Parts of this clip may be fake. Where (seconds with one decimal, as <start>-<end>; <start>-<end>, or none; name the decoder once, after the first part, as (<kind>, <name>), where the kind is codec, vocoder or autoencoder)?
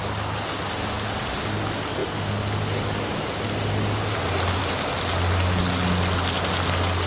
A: none